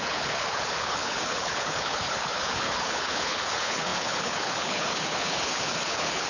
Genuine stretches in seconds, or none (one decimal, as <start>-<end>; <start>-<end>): none

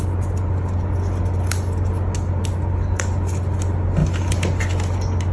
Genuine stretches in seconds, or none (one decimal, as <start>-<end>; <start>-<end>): 0.0-5.3

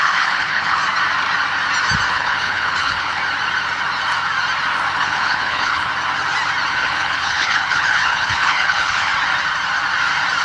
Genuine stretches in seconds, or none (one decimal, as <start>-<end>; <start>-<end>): 0.8-2.1; 3.2-4.9; 5.9-6.7; 9.1-10.4

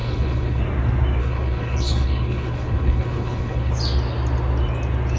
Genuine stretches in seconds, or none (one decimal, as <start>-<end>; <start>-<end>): 0.6-1.2; 3.7-5.2

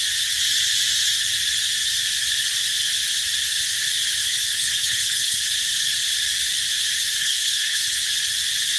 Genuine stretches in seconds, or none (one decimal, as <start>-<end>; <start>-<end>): 0.0-4.2; 5.4-7.2; 8.0-8.8

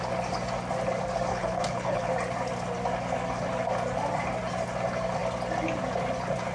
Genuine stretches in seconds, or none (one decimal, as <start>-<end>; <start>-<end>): 0.0-1.3; 2.1-6.5